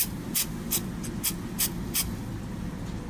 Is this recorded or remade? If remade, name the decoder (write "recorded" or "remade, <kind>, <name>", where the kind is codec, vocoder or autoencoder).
recorded